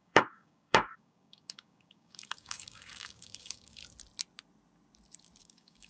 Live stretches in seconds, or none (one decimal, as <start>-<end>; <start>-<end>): 3.8-5.4